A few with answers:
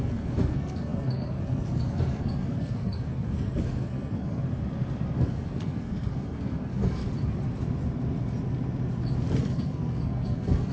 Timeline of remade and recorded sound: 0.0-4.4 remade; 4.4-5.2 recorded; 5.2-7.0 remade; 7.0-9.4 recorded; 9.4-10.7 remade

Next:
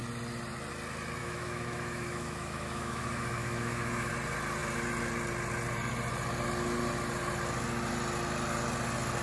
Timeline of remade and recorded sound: 0.0-1.2 recorded; 1.2-4.1 remade; 4.1-9.2 recorded

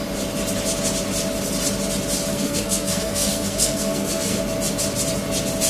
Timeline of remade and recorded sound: 0.0-2.3 recorded; 2.3-4.4 remade; 4.4-5.7 recorded

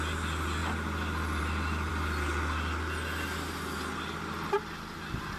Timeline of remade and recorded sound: 0.0-5.4 recorded

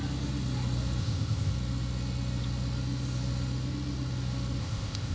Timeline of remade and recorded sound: 0.0-1.0 recorded; 1.0-1.5 remade; 1.5-4.6 recorded; 4.6-5.1 remade

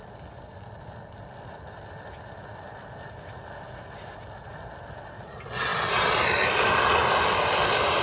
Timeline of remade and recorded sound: 0.0-5.7 recorded; 5.7-6.8 remade; 6.8-8.0 recorded